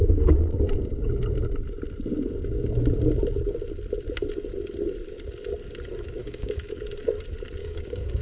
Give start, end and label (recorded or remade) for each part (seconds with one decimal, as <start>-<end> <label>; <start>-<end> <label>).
0.0-0.6 remade; 0.6-6.2 recorded; 6.2-6.8 remade; 6.8-7.6 recorded; 7.6-8.2 remade

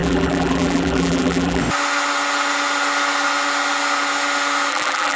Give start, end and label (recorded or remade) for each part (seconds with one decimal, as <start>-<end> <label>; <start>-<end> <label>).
0.0-1.6 remade; 1.6-4.7 recorded; 4.7-5.2 remade

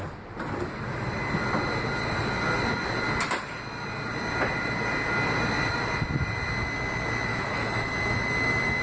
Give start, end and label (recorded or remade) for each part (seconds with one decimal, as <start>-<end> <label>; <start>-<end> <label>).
0.0-7.3 recorded; 7.3-8.8 remade

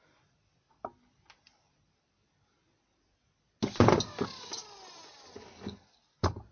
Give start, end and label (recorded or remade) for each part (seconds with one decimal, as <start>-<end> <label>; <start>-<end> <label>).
0.0-6.5 recorded

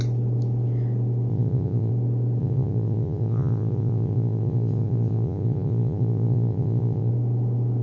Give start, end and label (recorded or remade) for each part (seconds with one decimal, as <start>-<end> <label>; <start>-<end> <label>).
0.0-1.3 recorded; 1.3-1.9 remade; 1.9-2.4 recorded; 2.4-7.1 remade; 7.1-7.8 recorded

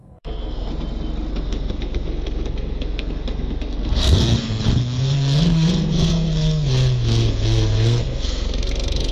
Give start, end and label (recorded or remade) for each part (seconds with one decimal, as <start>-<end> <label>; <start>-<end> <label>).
0.0-0.7 remade; 0.7-1.3 recorded; 1.3-9.1 remade

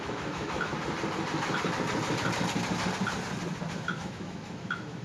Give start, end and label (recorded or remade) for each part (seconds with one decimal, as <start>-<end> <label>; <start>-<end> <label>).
0.0-0.7 remade; 0.7-3.7 recorded; 3.7-5.0 remade

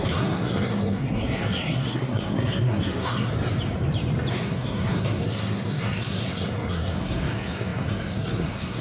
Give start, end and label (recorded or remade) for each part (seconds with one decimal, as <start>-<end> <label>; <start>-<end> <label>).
0.0-3.3 remade; 3.3-4.3 recorded; 4.3-8.8 remade